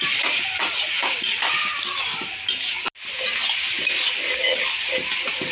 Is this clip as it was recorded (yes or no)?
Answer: yes